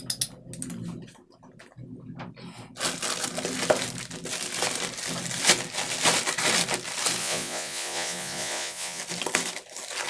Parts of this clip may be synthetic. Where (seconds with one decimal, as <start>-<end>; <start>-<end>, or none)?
7.2-9.0